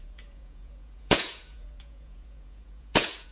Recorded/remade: remade